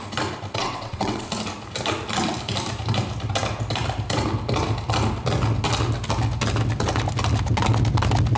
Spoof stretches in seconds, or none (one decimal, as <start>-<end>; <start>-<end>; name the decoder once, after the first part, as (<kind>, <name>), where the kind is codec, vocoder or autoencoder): 0.6-1.3 (vocoder, WaveNeXt)